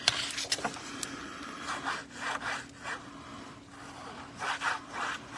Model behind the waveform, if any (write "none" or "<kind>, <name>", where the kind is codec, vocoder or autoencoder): none